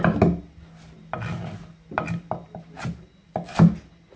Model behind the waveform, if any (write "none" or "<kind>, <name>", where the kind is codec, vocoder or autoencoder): none